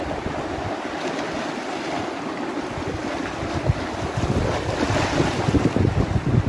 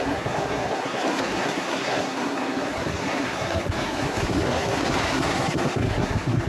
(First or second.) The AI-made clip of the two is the second